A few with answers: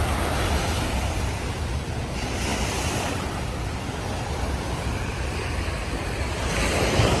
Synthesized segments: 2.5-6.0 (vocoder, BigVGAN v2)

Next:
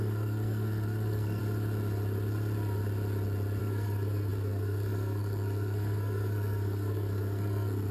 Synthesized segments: 0.0-1.4 (codec, SNAC); 3.6-7.9

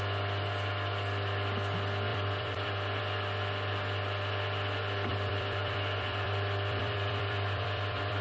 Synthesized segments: 2.1-3.0 (vocoder, BigVGAN v2); 5.1-8.2